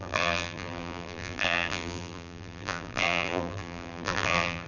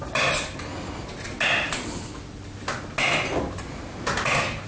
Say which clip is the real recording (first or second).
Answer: second